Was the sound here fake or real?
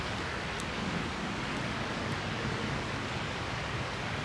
fake